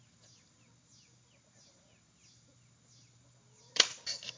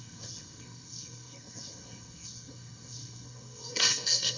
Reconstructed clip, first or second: second